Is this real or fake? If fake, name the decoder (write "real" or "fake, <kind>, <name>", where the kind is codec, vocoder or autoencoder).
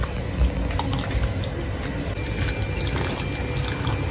real